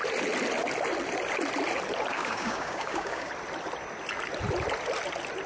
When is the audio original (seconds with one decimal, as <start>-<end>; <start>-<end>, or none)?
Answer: 0.0-2.1; 3.3-5.5